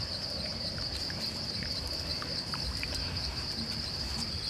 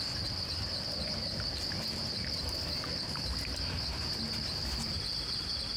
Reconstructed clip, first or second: first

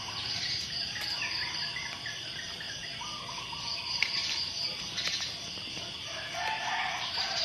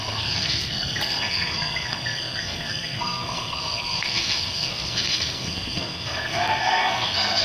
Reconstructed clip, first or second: second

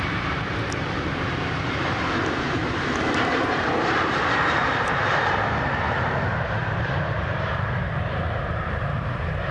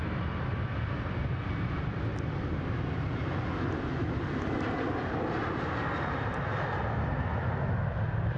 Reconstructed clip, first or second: first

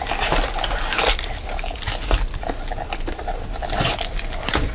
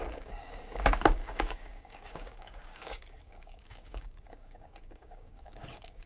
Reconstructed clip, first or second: second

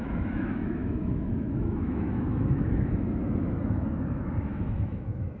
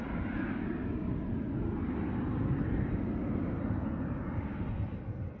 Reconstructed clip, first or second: first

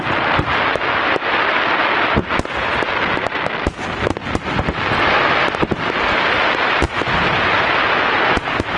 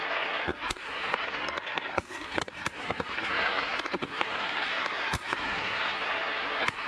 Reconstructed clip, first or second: second